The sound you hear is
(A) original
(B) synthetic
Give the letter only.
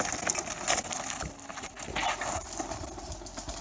A